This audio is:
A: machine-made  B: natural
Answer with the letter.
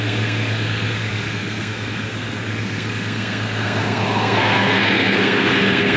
A